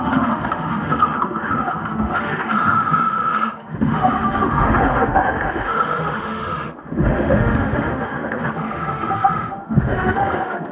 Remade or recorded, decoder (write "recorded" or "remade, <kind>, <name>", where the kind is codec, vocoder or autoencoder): remade, autoencoder, DAC-VAE